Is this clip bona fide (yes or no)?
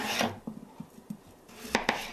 yes